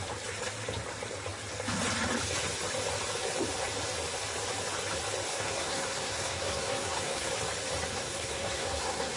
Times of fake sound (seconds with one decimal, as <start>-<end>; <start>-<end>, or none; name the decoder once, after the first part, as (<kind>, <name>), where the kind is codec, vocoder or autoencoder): 5.3-7.3 (codec, SNAC); 7.9-9.2